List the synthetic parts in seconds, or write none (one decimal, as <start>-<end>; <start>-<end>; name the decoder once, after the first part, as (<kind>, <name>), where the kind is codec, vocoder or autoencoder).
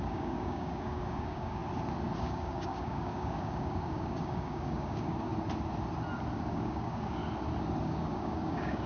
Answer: 0.0-1.6 (codec, DAC); 2.2-5.3; 6.5-7.2; 7.8-8.9